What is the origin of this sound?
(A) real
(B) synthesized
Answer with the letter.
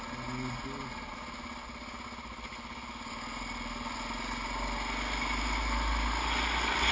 A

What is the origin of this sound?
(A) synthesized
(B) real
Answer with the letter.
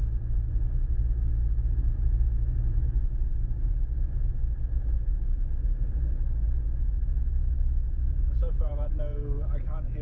A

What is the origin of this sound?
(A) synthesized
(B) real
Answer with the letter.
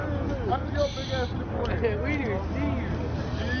B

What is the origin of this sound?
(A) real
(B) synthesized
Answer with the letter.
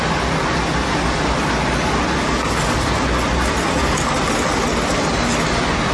A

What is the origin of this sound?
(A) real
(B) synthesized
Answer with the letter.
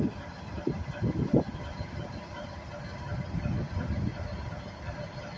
A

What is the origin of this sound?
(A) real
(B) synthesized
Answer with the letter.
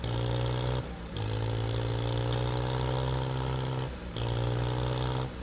A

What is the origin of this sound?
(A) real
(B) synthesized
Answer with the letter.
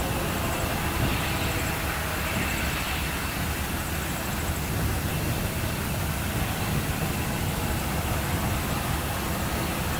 A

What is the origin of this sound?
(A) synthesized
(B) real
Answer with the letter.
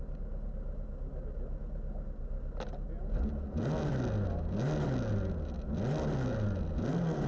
B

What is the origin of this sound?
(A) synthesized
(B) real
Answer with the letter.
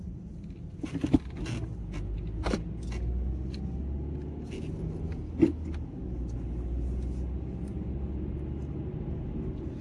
B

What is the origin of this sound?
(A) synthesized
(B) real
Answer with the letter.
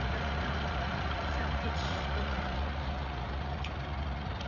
A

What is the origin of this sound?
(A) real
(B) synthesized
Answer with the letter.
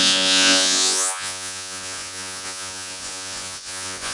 B